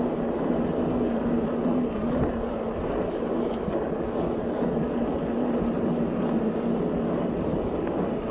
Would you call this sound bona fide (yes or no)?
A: yes